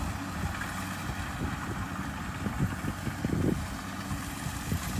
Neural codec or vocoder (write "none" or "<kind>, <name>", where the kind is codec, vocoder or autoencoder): none